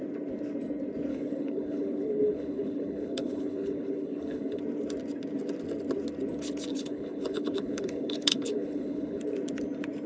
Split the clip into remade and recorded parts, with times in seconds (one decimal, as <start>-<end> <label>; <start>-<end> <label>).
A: 0.0-1.1 recorded; 1.1-4.6 remade; 4.6-6.7 recorded; 6.7-9.2 remade; 9.2-10.1 recorded

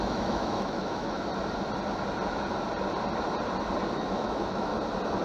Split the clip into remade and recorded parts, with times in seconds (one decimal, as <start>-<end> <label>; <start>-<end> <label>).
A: 0.0-1.3 remade; 1.3-3.9 recorded; 3.9-4.7 remade; 4.7-5.2 recorded